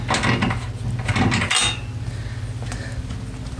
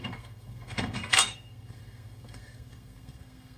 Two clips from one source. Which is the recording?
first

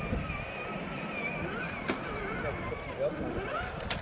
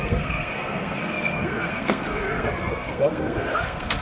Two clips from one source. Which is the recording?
first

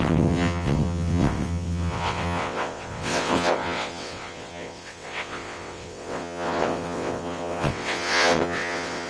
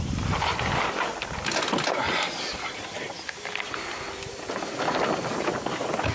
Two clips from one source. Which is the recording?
second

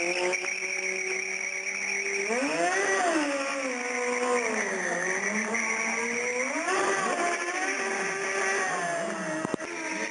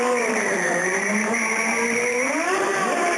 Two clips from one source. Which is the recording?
first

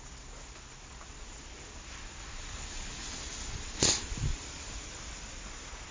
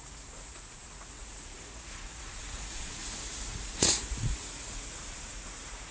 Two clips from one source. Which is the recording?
first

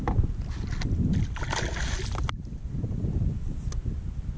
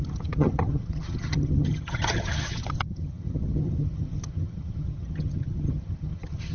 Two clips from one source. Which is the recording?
first